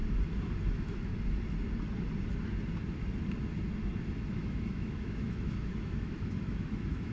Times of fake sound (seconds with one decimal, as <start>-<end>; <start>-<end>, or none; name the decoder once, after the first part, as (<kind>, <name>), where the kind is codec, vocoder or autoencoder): 0.7-1.1 (autoencoder, DAC-VAE); 4.4-7.1